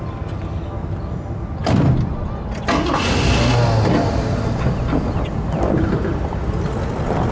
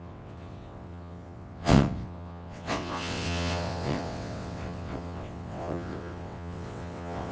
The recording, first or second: first